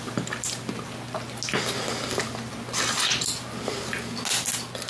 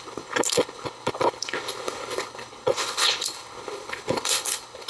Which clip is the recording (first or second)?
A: first